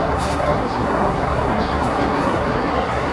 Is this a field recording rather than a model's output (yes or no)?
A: no